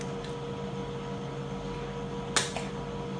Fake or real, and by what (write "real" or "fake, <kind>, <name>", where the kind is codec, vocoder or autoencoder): real